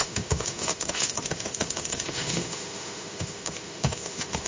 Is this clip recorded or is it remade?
remade